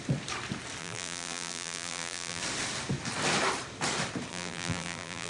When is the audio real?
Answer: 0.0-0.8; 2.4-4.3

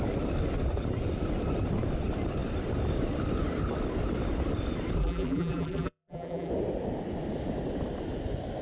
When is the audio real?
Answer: 0.0-5.0; 6.5-8.6

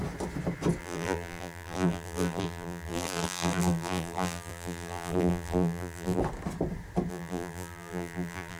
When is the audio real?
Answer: 0.0-0.8; 6.2-7.1

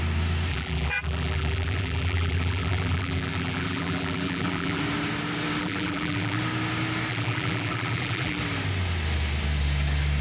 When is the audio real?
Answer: 0.0-0.5; 4.8-5.6; 6.4-7.1; 8.4-10.2